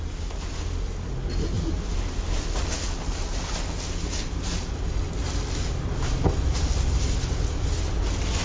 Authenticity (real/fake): real